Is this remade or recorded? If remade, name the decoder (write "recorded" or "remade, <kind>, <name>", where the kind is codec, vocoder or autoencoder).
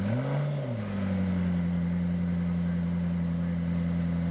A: recorded